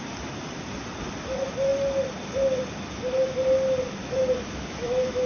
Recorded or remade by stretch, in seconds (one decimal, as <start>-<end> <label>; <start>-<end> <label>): 0.0-4.0 recorded; 4.0-5.3 remade